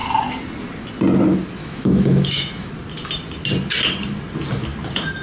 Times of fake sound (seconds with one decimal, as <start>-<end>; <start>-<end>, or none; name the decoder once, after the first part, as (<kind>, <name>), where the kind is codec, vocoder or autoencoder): 1.6-2.7 (autoencoder, DAC-VAE)